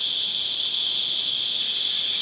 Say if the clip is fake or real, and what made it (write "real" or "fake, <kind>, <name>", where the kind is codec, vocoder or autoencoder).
real